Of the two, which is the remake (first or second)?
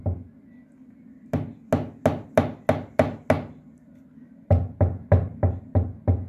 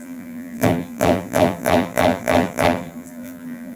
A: second